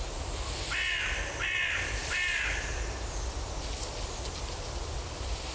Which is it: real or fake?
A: real